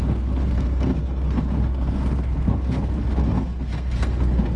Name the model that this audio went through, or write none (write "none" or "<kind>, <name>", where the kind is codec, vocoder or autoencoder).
codec, SNAC